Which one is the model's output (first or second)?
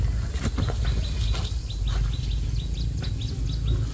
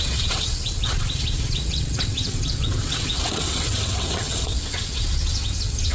second